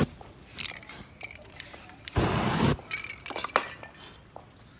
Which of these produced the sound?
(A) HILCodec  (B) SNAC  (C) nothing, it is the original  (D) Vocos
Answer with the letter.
C